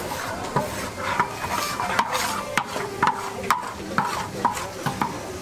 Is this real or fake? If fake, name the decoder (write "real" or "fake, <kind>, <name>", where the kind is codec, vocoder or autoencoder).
real